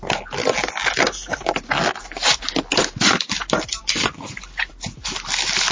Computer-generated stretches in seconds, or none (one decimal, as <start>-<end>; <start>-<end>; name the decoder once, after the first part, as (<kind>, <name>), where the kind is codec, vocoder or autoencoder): none